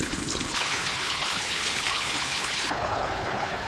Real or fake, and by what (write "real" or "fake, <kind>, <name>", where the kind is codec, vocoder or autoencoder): fake, codec, HILCodec